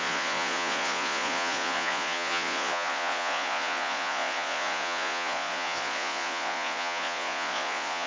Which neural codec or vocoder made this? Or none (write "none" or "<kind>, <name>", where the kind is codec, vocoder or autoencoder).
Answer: vocoder, Vocos